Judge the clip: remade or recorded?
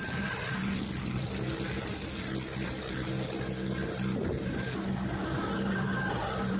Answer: recorded